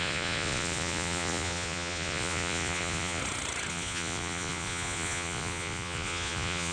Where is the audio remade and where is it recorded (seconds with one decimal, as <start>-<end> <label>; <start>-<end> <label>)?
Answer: 0.0-3.2 remade; 3.2-3.7 recorded; 3.7-6.7 remade